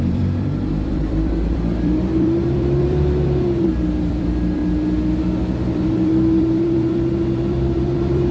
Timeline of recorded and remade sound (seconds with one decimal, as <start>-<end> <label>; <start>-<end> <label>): 0.0-4.6 remade; 4.6-5.7 recorded; 5.7-8.3 remade